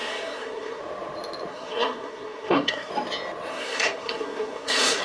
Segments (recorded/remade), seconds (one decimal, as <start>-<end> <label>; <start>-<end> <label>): 0.0-0.8 remade; 0.8-1.5 recorded; 1.5-2.9 remade; 2.9-3.5 recorded; 3.5-5.0 remade